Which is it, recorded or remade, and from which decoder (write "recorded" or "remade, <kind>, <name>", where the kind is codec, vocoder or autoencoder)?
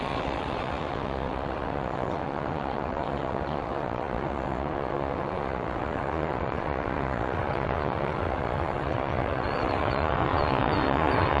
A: remade, vocoder, WaveNeXt